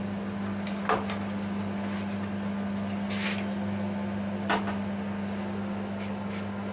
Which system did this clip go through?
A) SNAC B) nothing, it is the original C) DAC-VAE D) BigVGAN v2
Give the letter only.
B